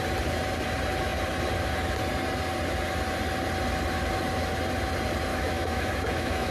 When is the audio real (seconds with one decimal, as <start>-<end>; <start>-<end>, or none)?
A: 0.0-5.3